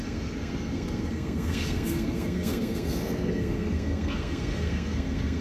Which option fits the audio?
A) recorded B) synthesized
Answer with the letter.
B